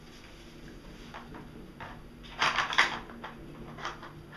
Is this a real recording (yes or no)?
yes